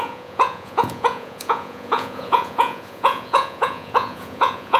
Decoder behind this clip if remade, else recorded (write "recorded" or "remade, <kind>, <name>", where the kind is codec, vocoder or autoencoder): remade, vocoder, Vocos